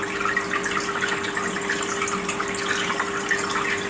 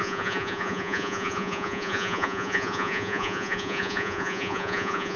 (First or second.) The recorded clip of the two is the first